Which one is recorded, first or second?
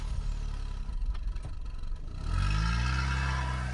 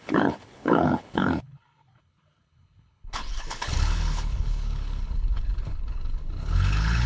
first